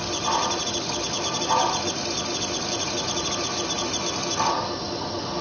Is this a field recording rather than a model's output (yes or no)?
yes